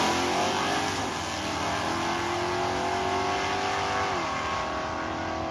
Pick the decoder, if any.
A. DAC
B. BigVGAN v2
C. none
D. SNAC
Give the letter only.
C